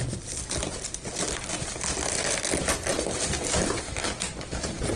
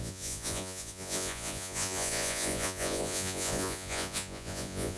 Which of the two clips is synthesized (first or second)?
second